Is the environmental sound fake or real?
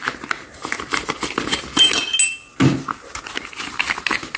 real